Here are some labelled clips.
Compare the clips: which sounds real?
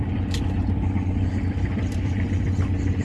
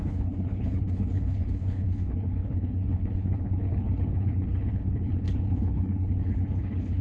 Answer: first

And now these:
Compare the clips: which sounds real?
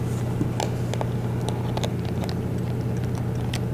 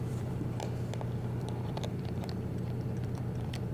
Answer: first